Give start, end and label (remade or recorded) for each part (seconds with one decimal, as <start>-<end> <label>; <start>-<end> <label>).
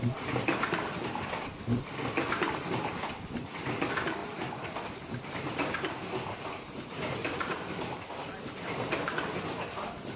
0.0-10.2 remade